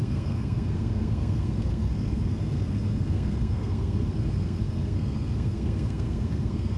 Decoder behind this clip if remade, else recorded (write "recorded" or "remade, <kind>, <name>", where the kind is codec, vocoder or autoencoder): remade, codec, SNAC